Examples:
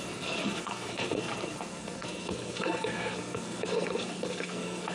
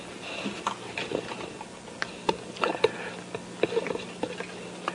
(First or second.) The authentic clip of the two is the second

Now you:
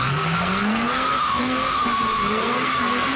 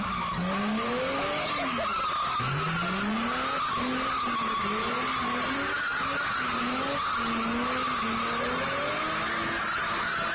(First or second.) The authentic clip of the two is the second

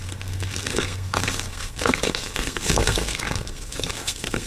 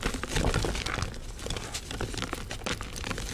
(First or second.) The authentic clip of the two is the second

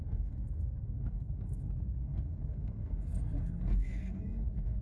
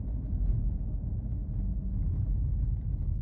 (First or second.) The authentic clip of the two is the second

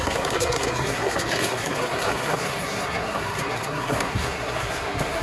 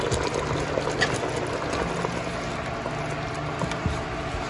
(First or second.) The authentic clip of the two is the second